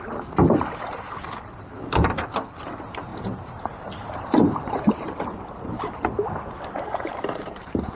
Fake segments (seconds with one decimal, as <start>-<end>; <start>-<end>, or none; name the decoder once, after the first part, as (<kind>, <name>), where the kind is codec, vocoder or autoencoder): 3.1-7.2 (vocoder, BigVGAN v2)